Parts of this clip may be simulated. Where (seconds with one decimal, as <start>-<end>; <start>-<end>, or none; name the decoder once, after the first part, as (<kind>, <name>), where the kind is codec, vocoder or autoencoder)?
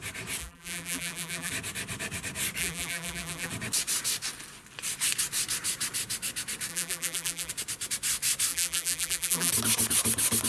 0.4-1.5 (vocoder, BigVGAN v2); 2.6-3.5; 6.7-7.5; 8.5-9.5